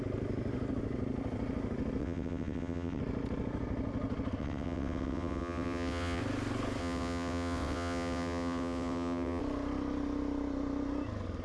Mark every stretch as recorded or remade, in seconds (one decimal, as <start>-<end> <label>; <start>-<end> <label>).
0.0-2.0 recorded; 2.0-3.0 remade; 3.0-4.4 recorded; 4.4-6.2 remade; 6.2-6.8 recorded; 6.8-9.4 remade; 9.4-11.4 recorded